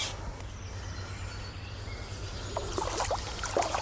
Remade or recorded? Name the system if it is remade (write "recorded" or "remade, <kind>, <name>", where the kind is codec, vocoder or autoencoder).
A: recorded